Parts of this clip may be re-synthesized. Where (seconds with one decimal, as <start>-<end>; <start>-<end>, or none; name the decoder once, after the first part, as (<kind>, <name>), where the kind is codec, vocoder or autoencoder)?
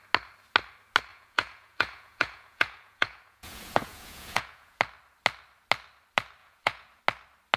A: 1.1-4.8 (vocoder, Vocos); 6.4-7.0